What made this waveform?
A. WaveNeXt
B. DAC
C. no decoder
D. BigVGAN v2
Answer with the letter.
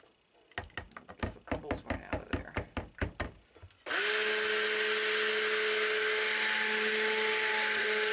C